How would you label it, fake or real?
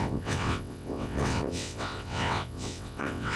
fake